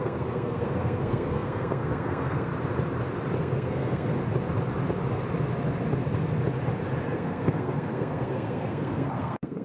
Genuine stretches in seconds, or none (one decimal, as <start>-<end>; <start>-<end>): 2.5-3.4; 4.1-7.1